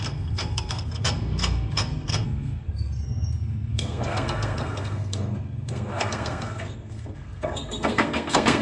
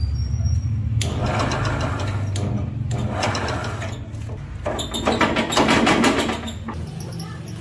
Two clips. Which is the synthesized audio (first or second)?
first